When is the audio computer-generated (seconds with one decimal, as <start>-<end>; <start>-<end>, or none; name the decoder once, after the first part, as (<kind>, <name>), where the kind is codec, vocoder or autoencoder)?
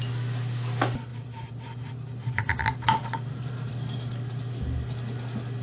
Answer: 1.1-3.7 (vocoder, BigVGAN v2)